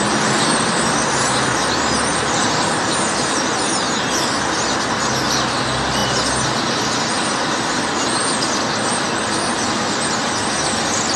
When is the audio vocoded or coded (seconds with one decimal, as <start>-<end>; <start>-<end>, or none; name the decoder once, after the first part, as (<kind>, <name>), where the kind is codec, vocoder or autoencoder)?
none